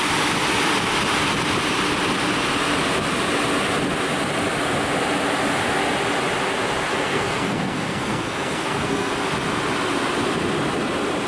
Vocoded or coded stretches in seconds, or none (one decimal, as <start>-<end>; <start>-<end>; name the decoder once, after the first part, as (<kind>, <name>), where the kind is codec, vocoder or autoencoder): 6.9-9.1 (codec, SNAC)